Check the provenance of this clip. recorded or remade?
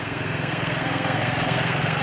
remade